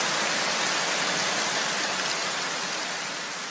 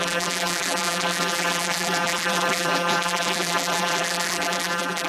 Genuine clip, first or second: first